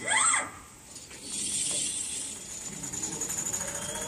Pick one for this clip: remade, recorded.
recorded